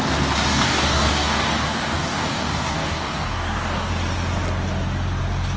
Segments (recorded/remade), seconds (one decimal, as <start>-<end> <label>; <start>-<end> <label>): 0.0-0.5 recorded; 0.5-3.9 remade; 3.9-5.6 recorded